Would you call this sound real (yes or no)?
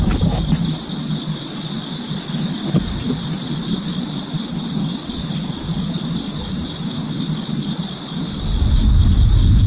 yes